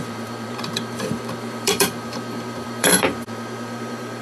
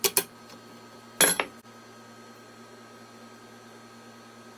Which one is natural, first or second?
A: second